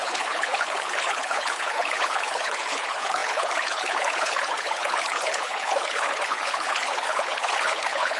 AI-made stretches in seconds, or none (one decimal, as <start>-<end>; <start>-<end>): 0.0-8.2